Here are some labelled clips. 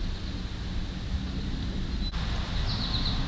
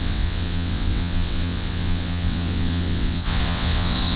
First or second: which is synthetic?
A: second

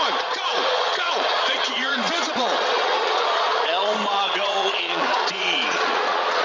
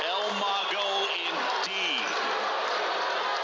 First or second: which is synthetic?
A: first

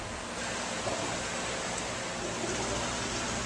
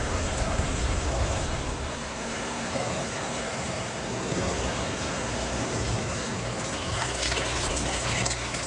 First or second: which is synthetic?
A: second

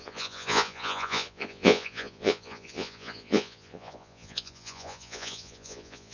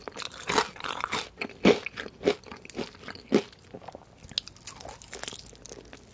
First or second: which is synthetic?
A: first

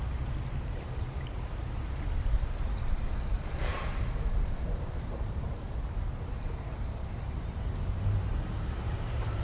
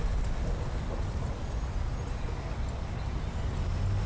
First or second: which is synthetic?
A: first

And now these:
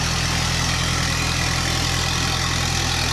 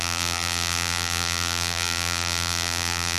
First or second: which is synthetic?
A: second